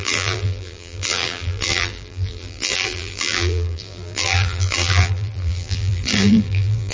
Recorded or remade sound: remade